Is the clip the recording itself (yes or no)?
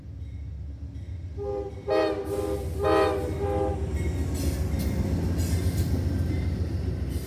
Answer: yes